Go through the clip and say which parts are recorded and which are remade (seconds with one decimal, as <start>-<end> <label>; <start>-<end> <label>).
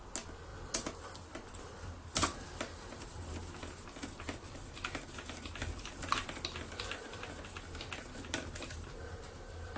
0.0-9.8 recorded